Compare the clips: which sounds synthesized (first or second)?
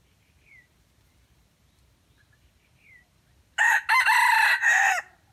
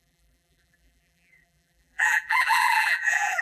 second